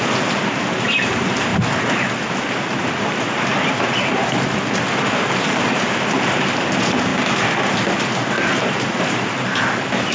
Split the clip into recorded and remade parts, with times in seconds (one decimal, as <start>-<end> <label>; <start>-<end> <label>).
0.0-1.5 remade; 1.5-3.7 recorded; 3.7-4.2 remade; 4.2-5.2 recorded; 5.2-7.1 remade; 7.1-9.0 recorded; 9.0-10.1 remade